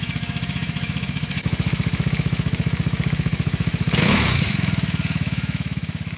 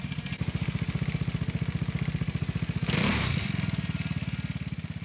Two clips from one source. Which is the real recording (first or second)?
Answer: second